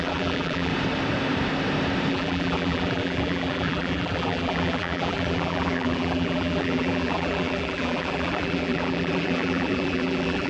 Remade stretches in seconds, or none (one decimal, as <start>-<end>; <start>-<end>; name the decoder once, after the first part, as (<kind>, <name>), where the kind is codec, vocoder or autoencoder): 0.0-0.7 (vocoder, BigVGAN v2); 2.1-10.5